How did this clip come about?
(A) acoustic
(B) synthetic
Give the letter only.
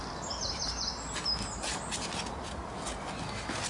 A